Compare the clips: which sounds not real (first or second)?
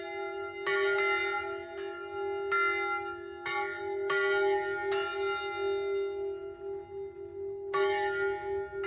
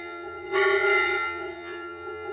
second